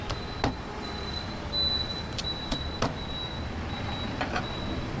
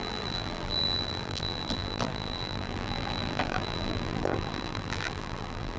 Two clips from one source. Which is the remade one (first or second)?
second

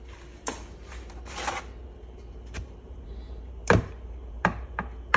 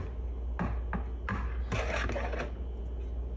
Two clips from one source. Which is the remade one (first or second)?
first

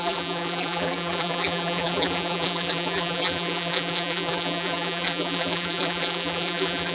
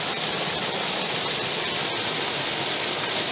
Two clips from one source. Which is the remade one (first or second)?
first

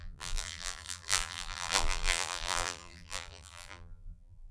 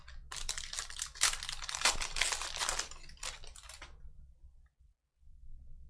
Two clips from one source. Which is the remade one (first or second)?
first